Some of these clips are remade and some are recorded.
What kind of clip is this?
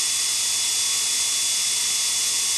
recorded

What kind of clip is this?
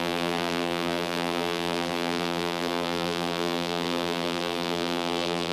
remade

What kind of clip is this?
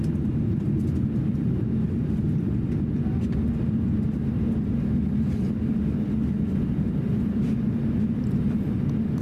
recorded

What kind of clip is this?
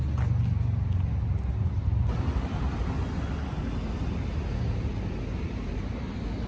recorded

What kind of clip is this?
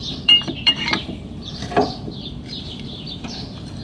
remade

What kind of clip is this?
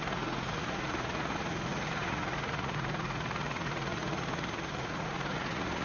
remade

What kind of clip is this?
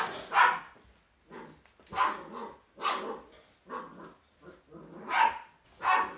recorded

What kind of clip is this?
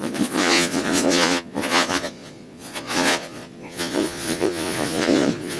remade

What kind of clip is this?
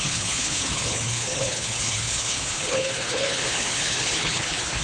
remade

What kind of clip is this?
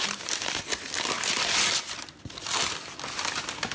recorded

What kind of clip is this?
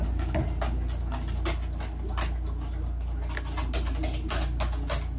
recorded